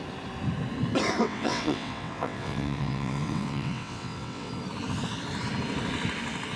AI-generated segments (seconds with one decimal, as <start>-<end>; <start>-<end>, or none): 1.2-4.5